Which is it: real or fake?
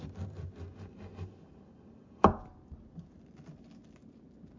real